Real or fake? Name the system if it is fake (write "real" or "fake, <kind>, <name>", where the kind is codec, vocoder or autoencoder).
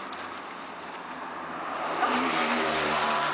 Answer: fake, vocoder, BigVGAN v2